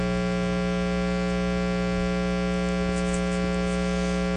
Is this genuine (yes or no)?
yes